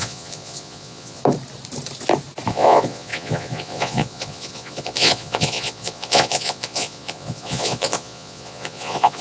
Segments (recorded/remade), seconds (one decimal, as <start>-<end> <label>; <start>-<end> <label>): 0.0-1.2 remade; 1.2-2.5 recorded; 2.5-9.2 remade